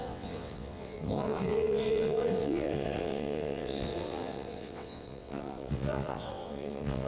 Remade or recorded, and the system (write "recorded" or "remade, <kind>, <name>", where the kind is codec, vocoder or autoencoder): remade, vocoder, WaveNeXt